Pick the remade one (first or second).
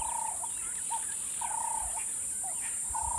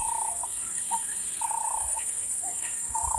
second